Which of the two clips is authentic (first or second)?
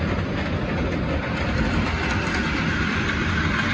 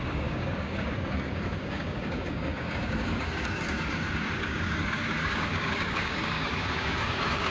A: first